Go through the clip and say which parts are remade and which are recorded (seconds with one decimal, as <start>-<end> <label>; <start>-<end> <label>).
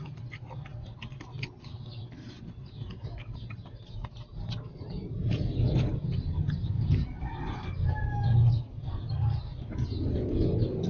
0.0-0.7 recorded; 0.7-5.9 remade; 5.9-8.8 recorded; 8.8-9.6 remade; 9.6-10.9 recorded